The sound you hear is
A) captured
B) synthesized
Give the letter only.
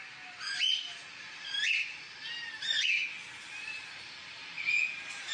A